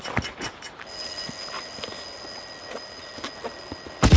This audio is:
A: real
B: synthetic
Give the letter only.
A